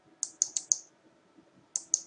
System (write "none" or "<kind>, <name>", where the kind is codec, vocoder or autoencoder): none